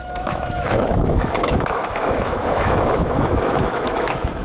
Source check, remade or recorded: remade